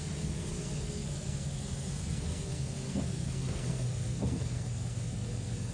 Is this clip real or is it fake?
fake